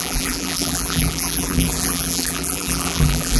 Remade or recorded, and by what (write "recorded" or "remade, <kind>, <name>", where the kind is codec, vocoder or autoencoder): remade, vocoder, BigVGAN v2